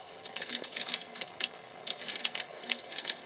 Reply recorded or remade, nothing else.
remade